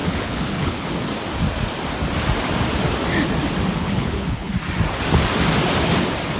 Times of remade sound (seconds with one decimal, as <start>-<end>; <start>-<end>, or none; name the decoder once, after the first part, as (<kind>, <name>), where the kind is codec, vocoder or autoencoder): 0.0-0.9 (codec, HILCodec); 3.8-4.5